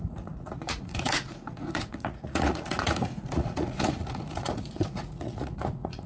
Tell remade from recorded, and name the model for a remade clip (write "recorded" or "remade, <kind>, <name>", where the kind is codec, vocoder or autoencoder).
remade, vocoder, Vocos